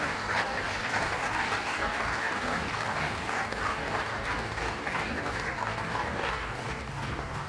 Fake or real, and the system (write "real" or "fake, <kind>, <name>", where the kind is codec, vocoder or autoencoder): fake, codec, DAC